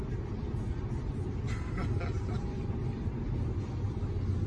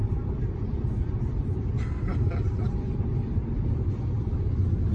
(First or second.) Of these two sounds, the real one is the first